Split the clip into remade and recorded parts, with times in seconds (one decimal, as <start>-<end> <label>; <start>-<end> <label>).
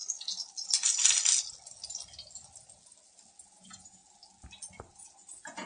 0.0-3.4 recorded; 3.4-4.0 remade; 4.0-5.0 recorded; 5.0-5.7 remade